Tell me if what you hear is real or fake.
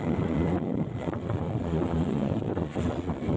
fake